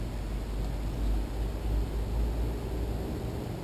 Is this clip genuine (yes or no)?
yes